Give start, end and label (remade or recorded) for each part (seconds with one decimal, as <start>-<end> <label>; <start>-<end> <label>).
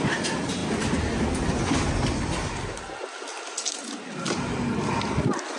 0.0-5.6 recorded